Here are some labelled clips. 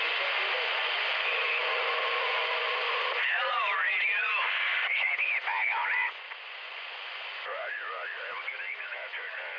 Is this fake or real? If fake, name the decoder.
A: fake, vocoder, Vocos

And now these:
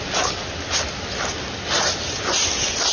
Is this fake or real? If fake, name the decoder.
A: fake, vocoder, BigVGAN v2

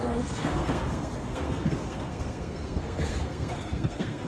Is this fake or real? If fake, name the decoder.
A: fake, codec, SNAC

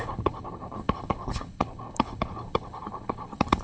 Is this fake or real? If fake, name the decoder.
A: fake, codec, HILCodec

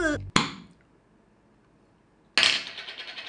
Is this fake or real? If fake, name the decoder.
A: real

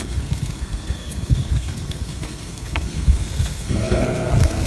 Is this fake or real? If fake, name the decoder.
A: fake, codec, SNAC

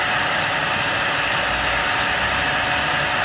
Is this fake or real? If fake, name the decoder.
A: real